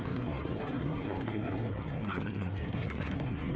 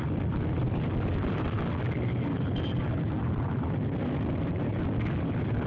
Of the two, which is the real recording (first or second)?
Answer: second